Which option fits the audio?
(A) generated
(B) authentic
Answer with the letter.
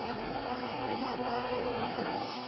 A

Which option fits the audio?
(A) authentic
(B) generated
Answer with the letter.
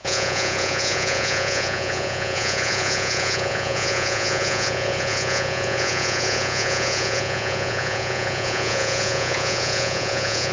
B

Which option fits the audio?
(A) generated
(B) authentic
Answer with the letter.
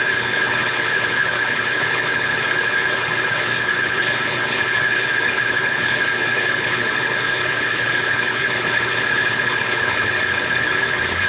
A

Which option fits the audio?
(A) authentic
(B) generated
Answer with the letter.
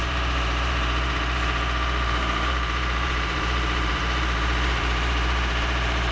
B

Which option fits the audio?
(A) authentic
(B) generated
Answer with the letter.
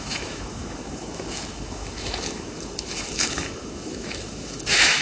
B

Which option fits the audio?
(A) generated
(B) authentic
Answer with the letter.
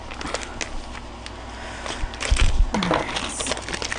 B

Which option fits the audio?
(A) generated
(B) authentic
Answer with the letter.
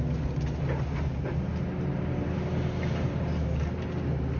B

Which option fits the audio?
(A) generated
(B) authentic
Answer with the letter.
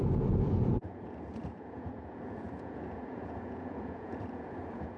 A